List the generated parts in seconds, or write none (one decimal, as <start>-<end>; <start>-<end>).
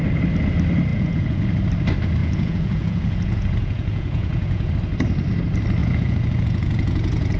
0.9-1.4; 2.2-4.7; 5.8-7.4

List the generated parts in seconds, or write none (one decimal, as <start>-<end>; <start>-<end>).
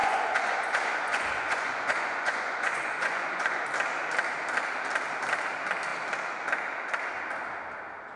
0.0-3.6